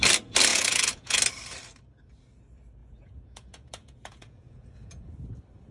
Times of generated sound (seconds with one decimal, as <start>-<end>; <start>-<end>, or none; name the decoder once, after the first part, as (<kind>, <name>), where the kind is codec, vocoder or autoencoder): 0.5-1.2 (vocoder, Vocos); 2.8-5.1